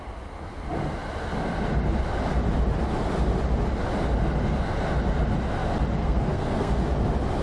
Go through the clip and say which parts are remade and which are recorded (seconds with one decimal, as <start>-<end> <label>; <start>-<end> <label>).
0.0-6.0 recorded; 6.0-6.8 remade; 6.8-7.4 recorded

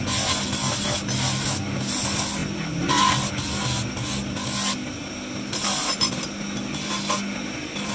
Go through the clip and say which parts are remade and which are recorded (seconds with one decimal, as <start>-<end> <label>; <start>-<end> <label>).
0.0-7.9 recorded

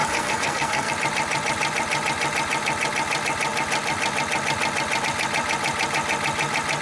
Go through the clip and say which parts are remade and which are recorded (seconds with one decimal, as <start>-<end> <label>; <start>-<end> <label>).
0.0-0.9 remade; 0.9-6.8 recorded

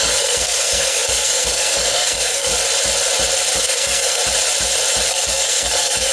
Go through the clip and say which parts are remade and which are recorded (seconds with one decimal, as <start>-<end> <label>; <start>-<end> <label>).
0.0-2.5 remade; 2.5-3.6 recorded; 3.6-4.2 remade; 4.2-5.1 recorded; 5.1-6.1 remade